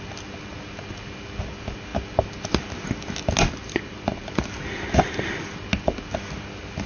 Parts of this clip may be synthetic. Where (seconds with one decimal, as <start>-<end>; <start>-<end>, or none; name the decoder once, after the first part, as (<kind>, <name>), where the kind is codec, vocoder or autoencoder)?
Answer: none